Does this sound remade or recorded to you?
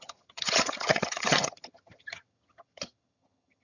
remade